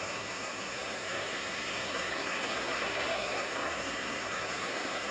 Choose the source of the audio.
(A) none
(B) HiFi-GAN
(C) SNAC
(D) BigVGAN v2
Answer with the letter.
C